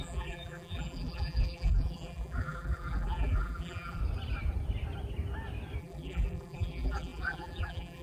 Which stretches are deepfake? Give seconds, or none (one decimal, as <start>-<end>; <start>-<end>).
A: 0.0-4.0; 5.8-8.0